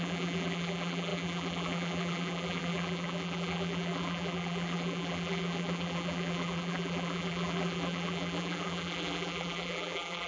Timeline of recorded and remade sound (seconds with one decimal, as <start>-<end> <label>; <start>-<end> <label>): 0.0-10.3 remade